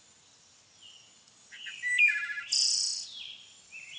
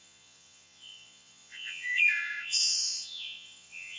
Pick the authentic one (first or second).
first